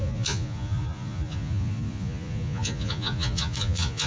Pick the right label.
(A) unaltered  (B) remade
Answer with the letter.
B